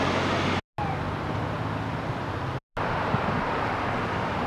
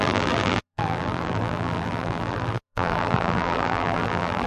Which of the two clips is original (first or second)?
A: first